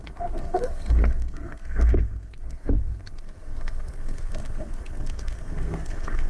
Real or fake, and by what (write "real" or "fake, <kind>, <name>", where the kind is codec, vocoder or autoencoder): fake, codec, SNAC